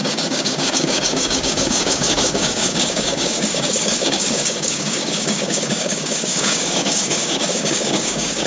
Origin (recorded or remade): remade